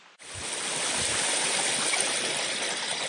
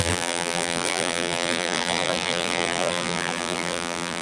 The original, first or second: first